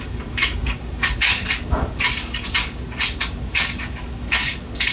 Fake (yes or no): yes